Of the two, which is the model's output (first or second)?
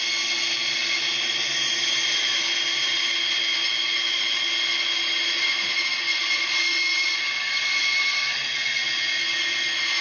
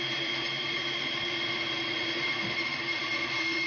second